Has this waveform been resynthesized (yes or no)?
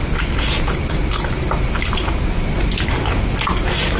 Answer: no